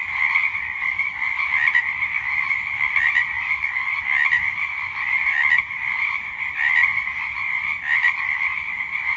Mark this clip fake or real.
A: real